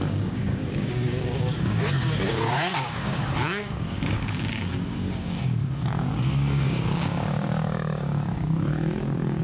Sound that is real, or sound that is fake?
fake